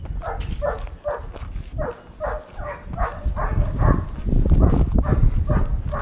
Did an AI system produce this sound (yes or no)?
no